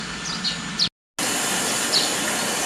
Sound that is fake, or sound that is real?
real